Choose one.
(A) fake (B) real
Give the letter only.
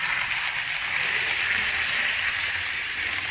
B